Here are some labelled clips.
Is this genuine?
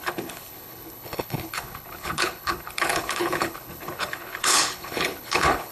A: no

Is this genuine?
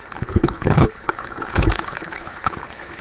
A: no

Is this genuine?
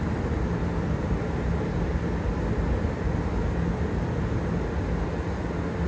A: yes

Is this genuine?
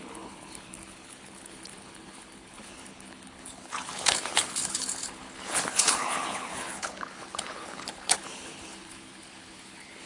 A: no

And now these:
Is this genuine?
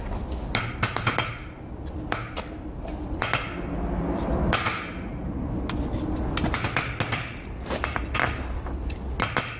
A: yes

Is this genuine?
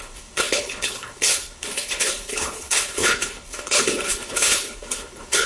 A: no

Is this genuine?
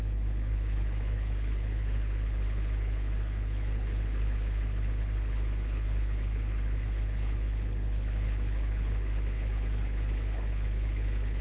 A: no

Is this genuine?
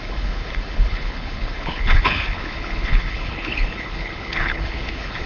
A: no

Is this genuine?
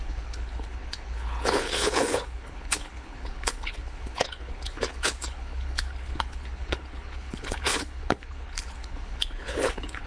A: no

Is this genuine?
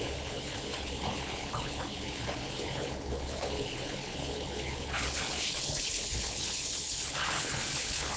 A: no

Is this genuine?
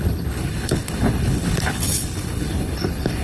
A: no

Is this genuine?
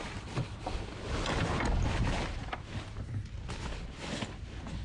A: yes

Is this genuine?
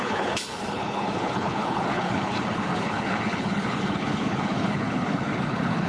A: no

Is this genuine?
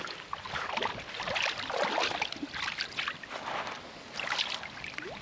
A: yes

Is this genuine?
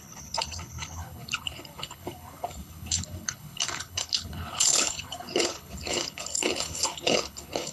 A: no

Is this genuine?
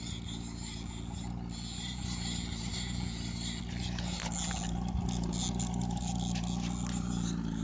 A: yes